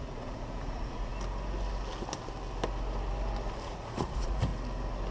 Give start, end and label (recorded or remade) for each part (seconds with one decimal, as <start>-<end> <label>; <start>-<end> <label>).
0.0-1.1 remade; 1.1-3.6 recorded; 3.6-4.5 remade; 4.5-5.1 recorded